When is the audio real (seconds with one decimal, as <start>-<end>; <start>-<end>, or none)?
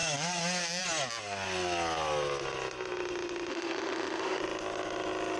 0.0-3.5; 4.4-5.4